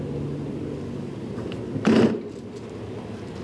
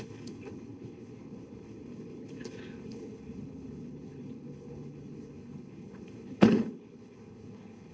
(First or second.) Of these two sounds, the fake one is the second